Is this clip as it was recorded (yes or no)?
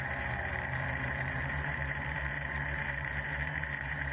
no